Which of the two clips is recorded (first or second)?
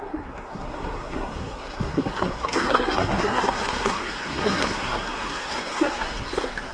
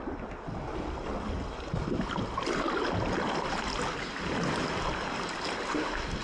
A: second